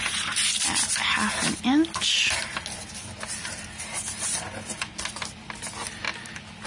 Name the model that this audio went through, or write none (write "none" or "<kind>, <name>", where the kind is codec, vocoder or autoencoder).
none